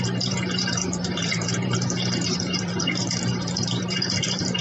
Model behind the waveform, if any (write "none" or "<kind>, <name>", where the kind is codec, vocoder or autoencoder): vocoder, BigVGAN v2